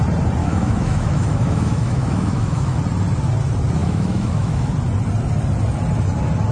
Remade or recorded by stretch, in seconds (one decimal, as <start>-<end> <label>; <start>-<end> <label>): 0.0-0.4 recorded; 0.4-2.8 remade; 2.8-3.8 recorded; 3.8-4.7 remade; 4.7-6.5 recorded